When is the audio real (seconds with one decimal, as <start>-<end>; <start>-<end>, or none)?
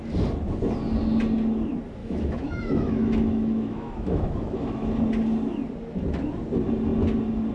0.0-2.0; 4.9-7.5